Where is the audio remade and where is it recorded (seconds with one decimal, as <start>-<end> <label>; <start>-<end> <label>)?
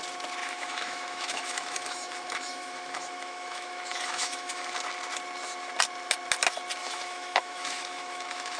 0.0-0.4 recorded; 0.4-4.7 remade; 4.7-6.8 recorded; 6.8-8.6 remade